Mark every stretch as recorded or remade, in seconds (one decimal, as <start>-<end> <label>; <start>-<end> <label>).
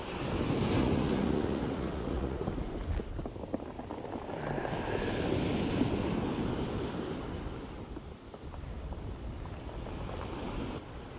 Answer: 0.0-0.8 recorded; 0.8-2.5 remade; 2.5-11.2 recorded